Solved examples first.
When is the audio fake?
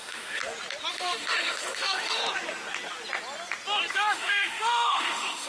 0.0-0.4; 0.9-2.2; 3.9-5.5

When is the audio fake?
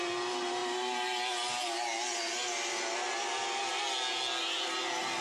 none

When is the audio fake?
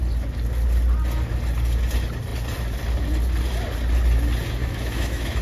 4.6-5.4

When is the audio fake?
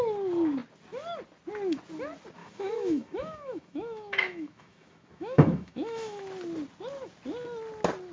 2.4-6.2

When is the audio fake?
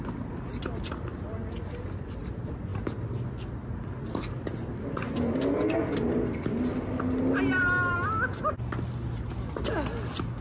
none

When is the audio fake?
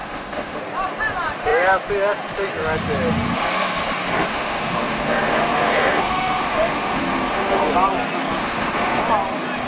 0.0-0.6; 4.3-7.7; 8.4-9.0